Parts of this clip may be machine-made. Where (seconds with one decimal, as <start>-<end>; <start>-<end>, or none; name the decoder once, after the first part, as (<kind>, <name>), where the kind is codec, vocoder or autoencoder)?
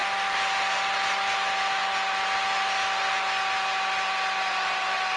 none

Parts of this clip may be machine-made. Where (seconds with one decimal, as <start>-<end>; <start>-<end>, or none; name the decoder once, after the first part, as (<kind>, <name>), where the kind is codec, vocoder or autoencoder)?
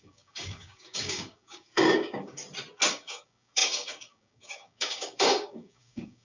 0.0-2.4 (codec, DAC); 2.9-6.2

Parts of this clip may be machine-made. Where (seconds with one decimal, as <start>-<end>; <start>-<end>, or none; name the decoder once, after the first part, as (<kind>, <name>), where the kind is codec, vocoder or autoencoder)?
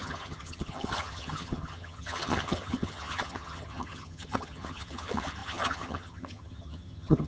0.0-7.3 (vocoder, HiFi-GAN)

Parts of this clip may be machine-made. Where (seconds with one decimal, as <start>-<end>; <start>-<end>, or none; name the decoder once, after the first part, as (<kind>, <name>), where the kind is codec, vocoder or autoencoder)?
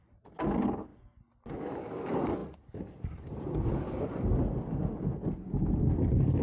none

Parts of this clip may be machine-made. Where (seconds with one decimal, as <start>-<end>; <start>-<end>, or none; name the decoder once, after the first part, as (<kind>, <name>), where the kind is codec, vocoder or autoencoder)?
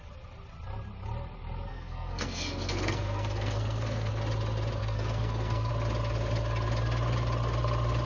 1.7-4.1 (codec, SNAC); 4.8-5.7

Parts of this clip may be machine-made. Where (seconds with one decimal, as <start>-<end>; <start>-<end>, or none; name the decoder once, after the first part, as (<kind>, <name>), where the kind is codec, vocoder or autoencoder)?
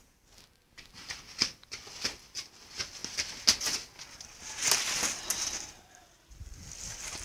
none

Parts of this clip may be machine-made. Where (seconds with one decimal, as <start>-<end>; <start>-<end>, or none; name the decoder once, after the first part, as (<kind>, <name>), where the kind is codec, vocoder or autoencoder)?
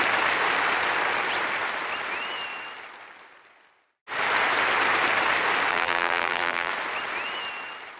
5.7-6.7 (vocoder, BigVGAN v2)